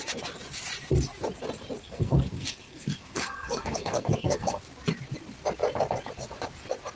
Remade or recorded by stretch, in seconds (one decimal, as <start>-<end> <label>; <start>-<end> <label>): 0.0-1.8 recorded; 1.8-4.6 remade; 4.6-7.0 recorded